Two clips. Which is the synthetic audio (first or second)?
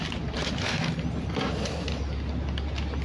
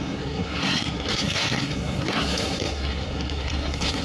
second